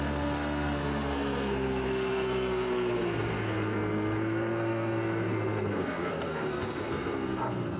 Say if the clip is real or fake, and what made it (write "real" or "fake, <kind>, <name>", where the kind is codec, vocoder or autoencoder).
fake, codec, SNAC